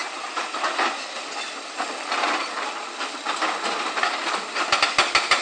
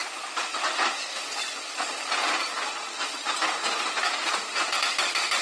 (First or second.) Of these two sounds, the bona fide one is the first